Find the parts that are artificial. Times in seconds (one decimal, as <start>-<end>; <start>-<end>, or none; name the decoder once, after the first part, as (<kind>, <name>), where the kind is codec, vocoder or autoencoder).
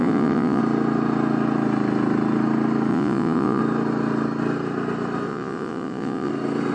0.0-0.6 (vocoder, Vocos); 2.9-3.6; 5.3-6.3